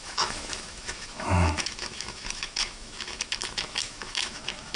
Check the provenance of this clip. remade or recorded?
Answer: remade